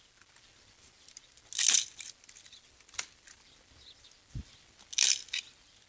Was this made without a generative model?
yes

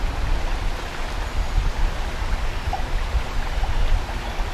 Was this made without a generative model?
yes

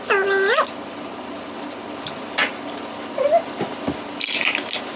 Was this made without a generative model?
yes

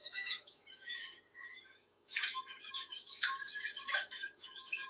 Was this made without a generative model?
no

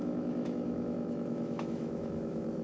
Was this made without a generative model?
no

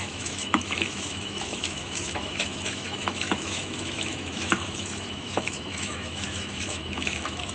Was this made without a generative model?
no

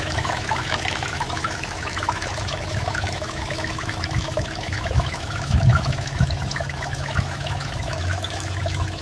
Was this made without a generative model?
no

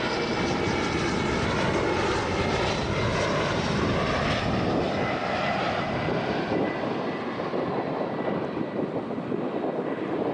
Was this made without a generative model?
yes